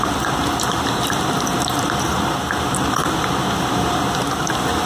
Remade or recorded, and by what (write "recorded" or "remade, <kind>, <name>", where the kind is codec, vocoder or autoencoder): remade, vocoder, BigVGAN v2